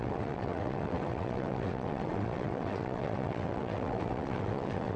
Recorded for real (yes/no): no